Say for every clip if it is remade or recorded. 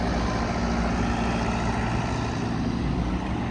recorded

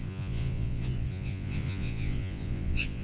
remade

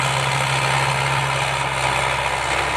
recorded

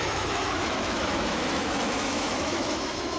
remade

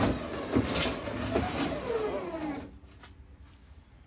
recorded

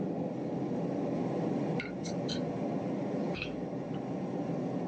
remade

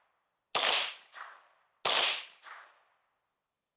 recorded